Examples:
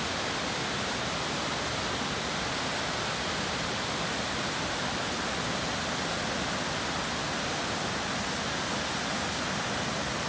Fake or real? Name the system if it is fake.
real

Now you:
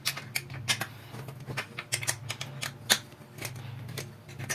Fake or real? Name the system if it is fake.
real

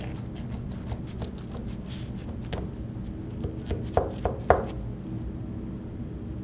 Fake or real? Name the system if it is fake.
real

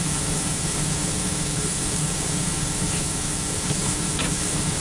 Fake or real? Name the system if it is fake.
fake, codec, DAC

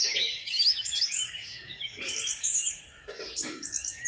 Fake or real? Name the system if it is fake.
fake, codec, DAC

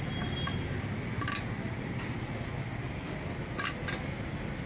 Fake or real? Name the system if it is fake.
real